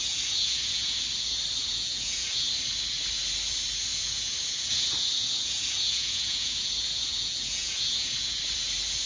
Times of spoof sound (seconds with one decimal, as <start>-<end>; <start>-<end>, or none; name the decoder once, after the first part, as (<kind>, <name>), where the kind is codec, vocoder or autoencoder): 0.0-1.0 (vocoder, Vocos); 1.6-2.5; 3.9-8.4